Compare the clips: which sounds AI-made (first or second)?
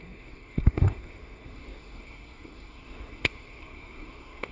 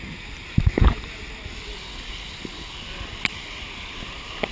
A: first